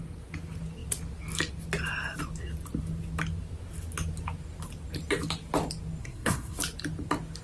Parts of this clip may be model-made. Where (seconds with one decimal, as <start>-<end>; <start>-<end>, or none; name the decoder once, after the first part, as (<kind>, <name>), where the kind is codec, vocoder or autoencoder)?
6.0-6.6 (codec, SNAC)